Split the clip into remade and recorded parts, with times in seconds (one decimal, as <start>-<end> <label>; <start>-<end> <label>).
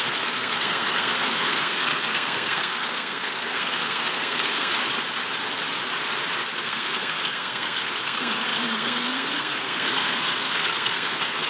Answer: 0.0-4.7 remade; 4.7-6.6 recorded; 6.6-11.5 remade